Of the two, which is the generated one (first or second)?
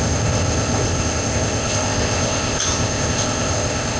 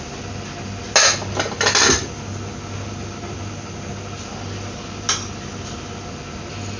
first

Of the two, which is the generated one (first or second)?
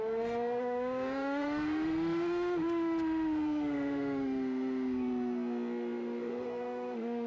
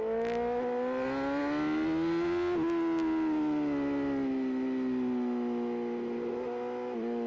first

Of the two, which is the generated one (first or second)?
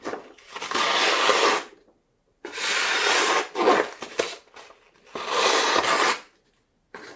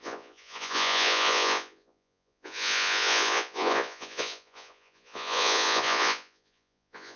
second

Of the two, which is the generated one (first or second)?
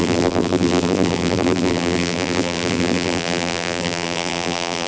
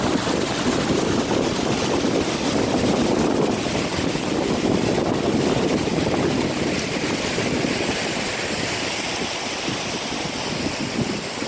first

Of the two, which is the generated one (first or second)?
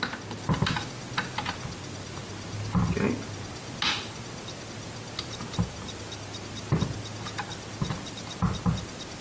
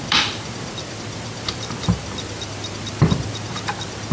second